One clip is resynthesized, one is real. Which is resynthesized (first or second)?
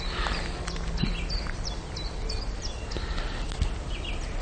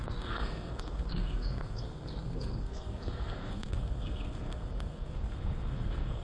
second